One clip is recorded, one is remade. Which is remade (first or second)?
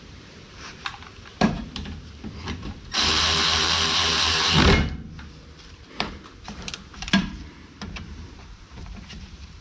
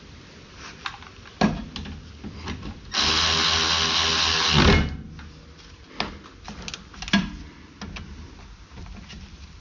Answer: first